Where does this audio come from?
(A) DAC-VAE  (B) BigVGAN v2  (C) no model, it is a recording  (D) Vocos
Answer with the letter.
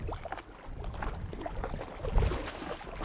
C